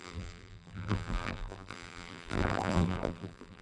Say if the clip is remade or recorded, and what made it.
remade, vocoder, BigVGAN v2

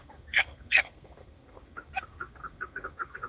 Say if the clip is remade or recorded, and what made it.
remade, codec, SNAC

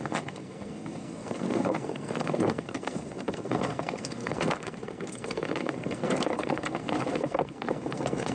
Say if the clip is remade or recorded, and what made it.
remade, codec, SNAC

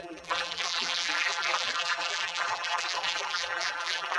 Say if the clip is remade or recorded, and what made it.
remade, vocoder, BigVGAN v2